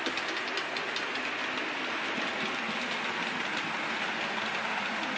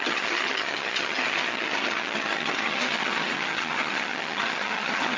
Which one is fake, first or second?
second